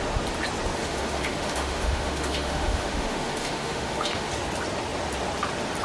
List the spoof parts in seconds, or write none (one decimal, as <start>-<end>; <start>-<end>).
0.8-4.3